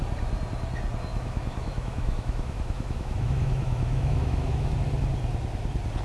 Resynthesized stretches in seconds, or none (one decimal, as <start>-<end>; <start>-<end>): 1.1-4.7